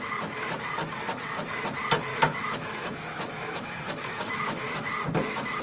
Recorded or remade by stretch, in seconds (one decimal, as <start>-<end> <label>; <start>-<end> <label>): 0.0-2.1 recorded; 2.1-5.6 remade